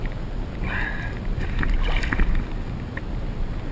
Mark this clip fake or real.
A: real